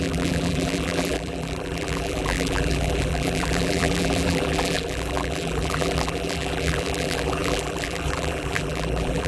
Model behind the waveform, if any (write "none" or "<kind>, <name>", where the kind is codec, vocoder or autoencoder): vocoder, BigVGAN v2